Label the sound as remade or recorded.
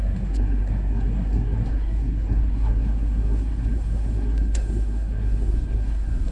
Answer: remade